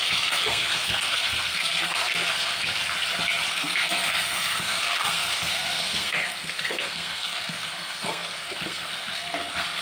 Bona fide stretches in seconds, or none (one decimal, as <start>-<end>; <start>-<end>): 2.8-3.5